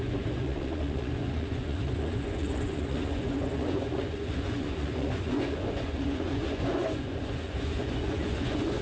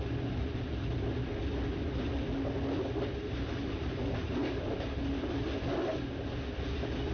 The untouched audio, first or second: second